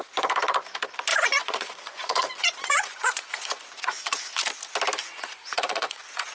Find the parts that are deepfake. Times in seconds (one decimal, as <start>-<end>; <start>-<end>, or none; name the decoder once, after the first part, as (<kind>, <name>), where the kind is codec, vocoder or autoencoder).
1.1-4.3 (vocoder, Vocos); 5.0-6.3